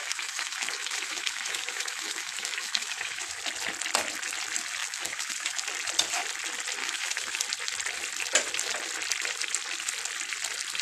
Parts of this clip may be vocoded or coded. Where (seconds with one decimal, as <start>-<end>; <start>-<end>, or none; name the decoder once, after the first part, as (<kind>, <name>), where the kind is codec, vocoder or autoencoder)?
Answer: 0.0-3.4 (autoencoder, DAC-VAE); 4.8-5.6; 6.8-7.4